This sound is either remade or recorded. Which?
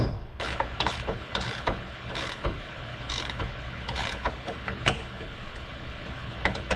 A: remade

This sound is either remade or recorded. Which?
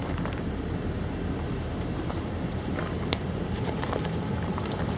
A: remade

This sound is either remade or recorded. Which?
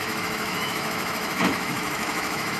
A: remade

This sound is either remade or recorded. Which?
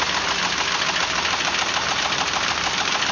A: recorded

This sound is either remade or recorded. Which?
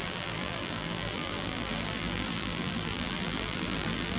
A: remade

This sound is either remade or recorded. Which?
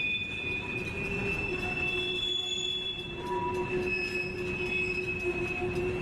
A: recorded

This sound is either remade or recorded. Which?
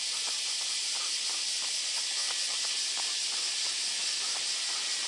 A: recorded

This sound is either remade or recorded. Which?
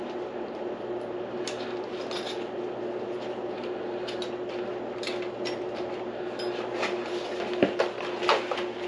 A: recorded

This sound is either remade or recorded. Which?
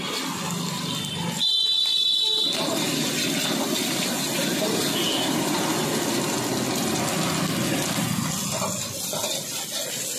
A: recorded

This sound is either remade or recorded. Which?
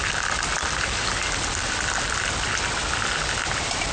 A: recorded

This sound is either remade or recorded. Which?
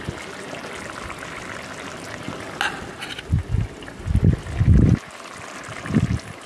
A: recorded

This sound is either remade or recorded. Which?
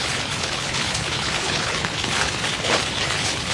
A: remade